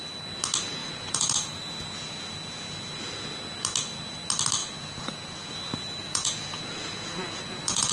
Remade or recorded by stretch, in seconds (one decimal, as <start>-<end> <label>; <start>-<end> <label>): 0.0-0.8 recorded; 0.8-1.6 remade; 1.6-4.6 recorded; 4.6-5.5 remade; 5.5-6.0 recorded; 6.0-7.9 remade